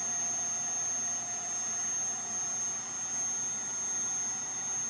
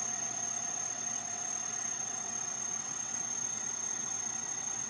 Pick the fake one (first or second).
second